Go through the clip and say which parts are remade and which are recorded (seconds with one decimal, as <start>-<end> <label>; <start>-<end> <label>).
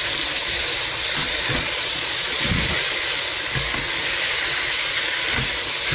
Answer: 0.0-1.2 recorded; 1.2-2.6 remade; 2.6-5.9 recorded